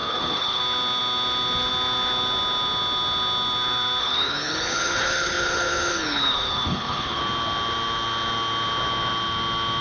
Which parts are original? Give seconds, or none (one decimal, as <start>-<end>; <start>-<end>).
0.6-4.0; 7.2-9.8